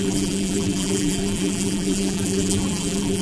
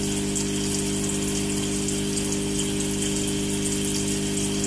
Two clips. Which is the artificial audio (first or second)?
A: first